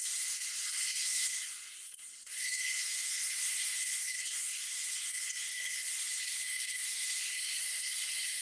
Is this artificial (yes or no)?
yes